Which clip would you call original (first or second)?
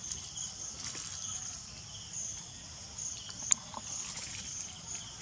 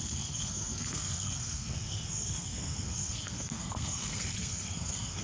first